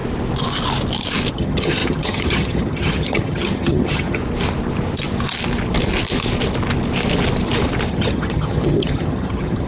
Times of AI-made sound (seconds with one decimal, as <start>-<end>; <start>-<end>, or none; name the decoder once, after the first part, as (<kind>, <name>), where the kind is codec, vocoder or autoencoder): 1.3-4.2 (vocoder, HiFi-GAN); 7.9-9.7